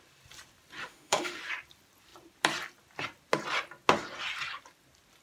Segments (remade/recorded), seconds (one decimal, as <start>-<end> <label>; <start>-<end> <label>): 0.0-0.8 recorded; 0.8-1.4 remade; 1.4-5.2 recorded